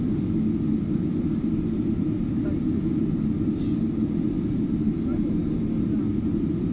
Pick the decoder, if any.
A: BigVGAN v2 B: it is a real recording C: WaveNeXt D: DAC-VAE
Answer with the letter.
B